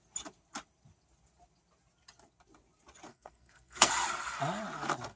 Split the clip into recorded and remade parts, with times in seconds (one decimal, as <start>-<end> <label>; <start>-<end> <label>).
0.0-3.1 recorded; 3.1-3.9 remade; 3.9-5.2 recorded